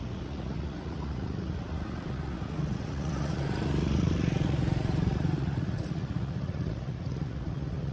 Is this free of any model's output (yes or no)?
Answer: no